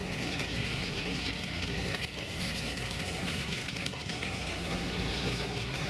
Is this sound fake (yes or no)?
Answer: yes